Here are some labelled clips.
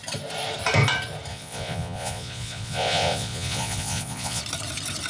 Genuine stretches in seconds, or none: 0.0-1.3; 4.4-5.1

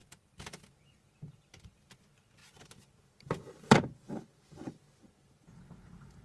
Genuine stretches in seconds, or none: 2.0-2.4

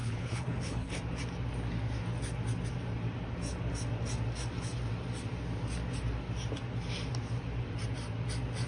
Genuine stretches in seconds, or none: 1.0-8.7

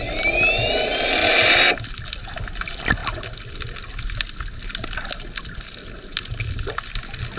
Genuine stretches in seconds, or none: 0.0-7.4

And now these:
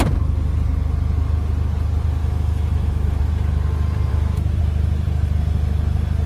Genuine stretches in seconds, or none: 0.0-2.2; 3.2-4.1; 4.6-6.3

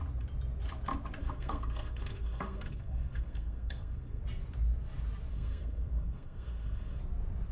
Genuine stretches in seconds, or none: 0.0-1.2; 4.2-5.3; 7.0-7.5

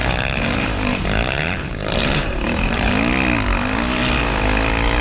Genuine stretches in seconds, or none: 2.9-5.0

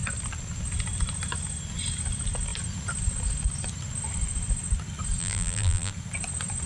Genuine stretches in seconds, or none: 0.0-5.2; 5.9-6.7